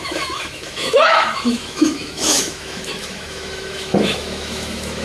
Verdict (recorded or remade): remade